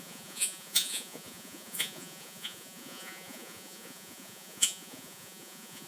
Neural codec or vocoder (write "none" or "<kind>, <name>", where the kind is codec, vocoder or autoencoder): vocoder, Vocos